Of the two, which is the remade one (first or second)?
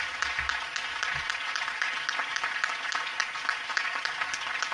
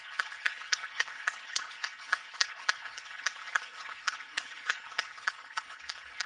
second